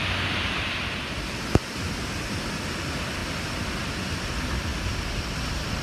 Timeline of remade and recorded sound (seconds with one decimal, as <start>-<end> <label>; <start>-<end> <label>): 0.0-5.8 recorded